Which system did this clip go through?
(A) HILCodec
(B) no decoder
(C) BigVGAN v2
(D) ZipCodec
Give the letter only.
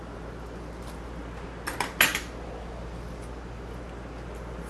B